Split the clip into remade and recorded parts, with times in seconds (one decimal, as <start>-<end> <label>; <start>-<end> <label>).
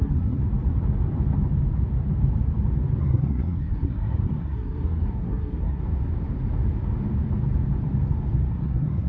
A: 0.0-0.4 remade; 0.4-3.0 recorded; 3.0-5.8 remade; 5.8-8.5 recorded; 8.5-9.1 remade